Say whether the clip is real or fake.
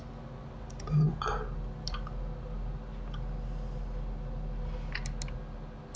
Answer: real